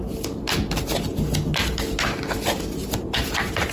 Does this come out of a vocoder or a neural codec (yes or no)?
no